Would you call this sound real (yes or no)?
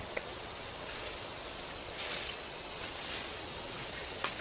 no